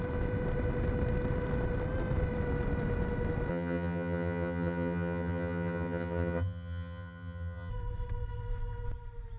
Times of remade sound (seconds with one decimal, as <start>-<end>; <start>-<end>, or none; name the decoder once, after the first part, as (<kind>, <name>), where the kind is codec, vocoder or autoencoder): 3.5-7.7 (vocoder, HiFi-GAN)